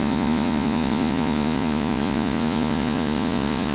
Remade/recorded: remade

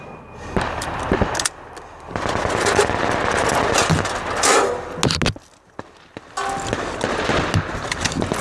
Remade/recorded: recorded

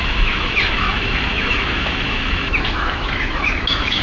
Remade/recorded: remade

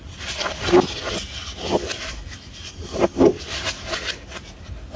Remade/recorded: remade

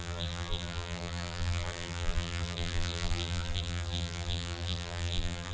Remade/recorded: remade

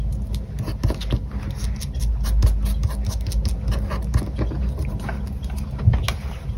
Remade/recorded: recorded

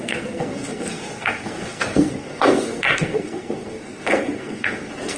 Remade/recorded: remade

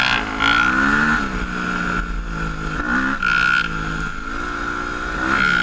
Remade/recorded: recorded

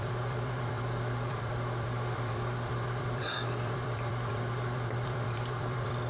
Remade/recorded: remade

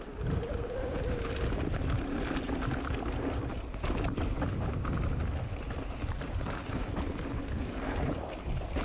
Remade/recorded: recorded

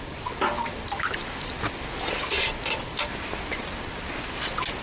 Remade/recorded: recorded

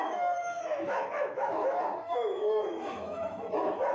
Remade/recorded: remade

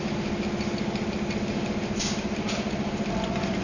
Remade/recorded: recorded